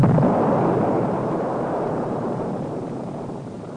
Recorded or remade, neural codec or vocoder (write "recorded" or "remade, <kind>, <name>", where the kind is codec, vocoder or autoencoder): remade, vocoder, BigVGAN v2